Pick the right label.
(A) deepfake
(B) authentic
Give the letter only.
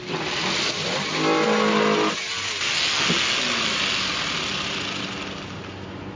B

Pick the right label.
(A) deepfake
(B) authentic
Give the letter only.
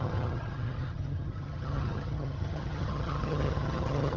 A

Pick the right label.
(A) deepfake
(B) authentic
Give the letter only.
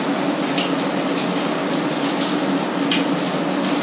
B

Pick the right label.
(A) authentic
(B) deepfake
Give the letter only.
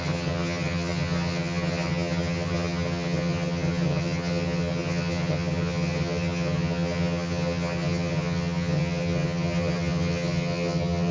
B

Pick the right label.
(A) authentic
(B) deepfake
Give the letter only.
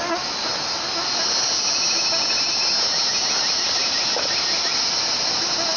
A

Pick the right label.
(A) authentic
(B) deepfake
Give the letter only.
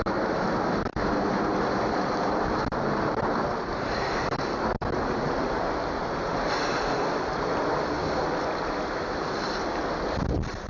A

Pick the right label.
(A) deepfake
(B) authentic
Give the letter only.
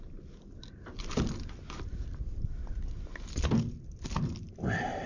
B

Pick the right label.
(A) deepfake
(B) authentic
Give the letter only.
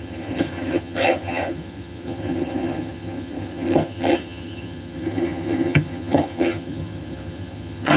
A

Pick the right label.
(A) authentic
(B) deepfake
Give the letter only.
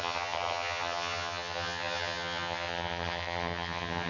B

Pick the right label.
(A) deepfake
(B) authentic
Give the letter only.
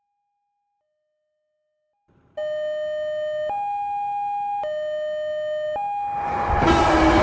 B